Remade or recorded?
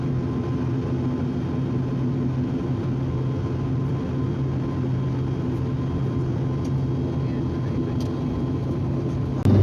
recorded